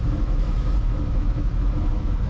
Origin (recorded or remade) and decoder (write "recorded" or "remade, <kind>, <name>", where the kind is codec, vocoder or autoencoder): remade, autoencoder, DAC-VAE